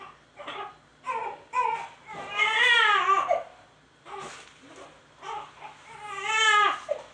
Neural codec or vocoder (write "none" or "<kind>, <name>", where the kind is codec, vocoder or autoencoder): none